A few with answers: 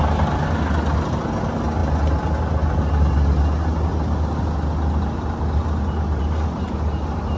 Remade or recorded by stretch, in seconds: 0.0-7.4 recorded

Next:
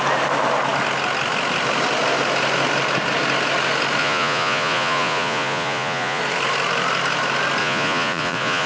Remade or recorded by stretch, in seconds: 0.0-4.0 recorded; 4.0-6.2 remade; 6.2-7.6 recorded; 7.6-8.7 remade

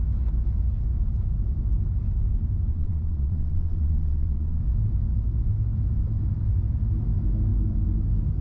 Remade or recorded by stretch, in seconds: 0.0-2.7 recorded; 2.7-4.6 remade; 4.6-8.4 recorded

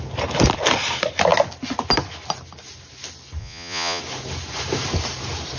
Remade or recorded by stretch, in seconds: 0.0-3.4 recorded; 3.4-4.0 remade; 4.0-5.6 recorded

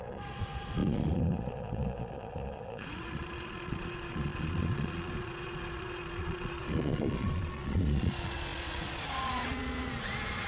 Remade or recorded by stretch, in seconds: 0.0-10.5 remade

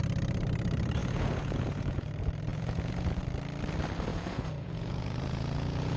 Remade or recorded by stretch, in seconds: 0.0-1.0 recorded; 1.0-2.1 remade; 2.1-2.5 recorded; 2.5-3.2 remade; 3.2-4.1 recorded; 4.1-6.0 remade

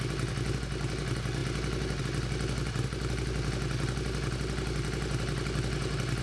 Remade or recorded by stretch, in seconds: 0.0-6.2 recorded

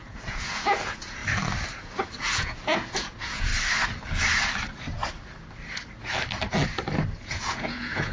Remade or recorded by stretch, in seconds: 0.0-1.2 remade; 1.2-1.7 recorded; 1.7-3.5 remade; 3.5-7.2 recorded; 7.2-8.1 remade